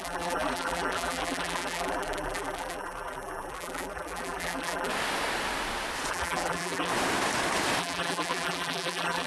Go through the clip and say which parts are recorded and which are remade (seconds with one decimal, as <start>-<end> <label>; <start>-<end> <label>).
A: 0.0-4.9 remade; 4.9-6.1 recorded; 6.1-6.9 remade; 6.9-7.8 recorded; 7.8-9.3 remade